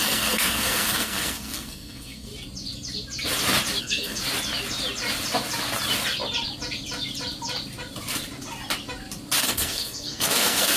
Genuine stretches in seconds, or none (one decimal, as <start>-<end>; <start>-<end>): 2.3-3.8; 4.2-9.4